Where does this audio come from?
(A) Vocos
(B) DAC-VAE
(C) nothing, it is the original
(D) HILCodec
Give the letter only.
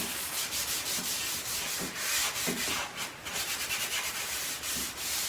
C